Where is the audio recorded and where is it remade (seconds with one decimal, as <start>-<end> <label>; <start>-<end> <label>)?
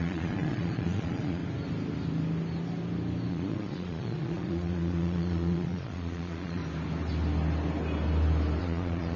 0.0-1.4 remade; 1.4-3.3 recorded; 3.3-6.6 remade; 6.6-8.6 recorded; 8.6-9.2 remade